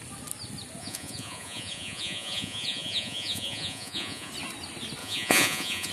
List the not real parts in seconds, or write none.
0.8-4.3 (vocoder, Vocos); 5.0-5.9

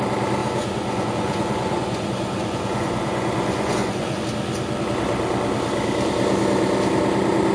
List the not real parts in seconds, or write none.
0.4-4.2 (vocoder, Vocos)

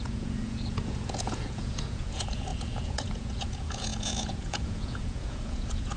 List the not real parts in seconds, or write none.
0.0-6.0 (vocoder, Vocos)

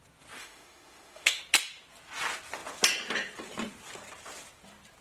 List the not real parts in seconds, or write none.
0.4-1.4 (autoencoder, DAC-VAE)

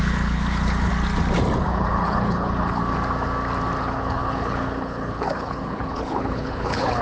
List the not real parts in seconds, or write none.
0.0-0.9 (codec, HILCodec); 1.6-2.8; 3.8-7.0

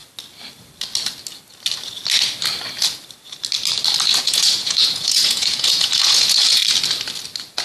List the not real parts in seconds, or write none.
4.2-6.6 (vocoder, Vocos)

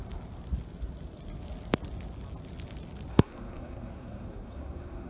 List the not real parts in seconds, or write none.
3.1-5.1 (codec, SNAC)